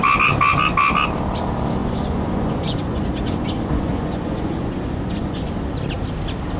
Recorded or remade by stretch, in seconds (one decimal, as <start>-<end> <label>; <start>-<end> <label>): 0.0-1.8 recorded; 1.8-5.5 remade; 5.5-6.6 recorded